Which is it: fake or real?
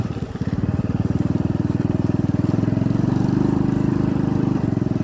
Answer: real